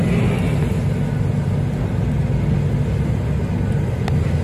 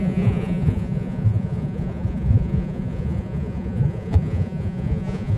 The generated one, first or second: second